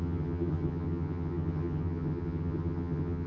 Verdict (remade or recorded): remade